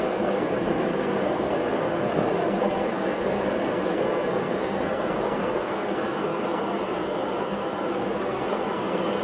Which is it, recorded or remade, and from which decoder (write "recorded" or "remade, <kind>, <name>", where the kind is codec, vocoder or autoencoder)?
remade, codec, SNAC